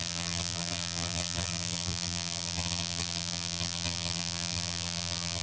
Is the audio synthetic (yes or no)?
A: yes